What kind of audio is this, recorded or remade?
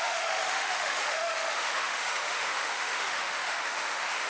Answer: remade